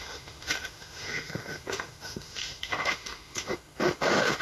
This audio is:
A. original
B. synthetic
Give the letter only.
B